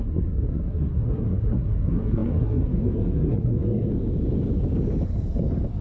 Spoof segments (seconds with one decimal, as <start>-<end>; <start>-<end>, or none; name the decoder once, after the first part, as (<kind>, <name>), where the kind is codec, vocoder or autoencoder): 0.0-3.9 (codec, SNAC)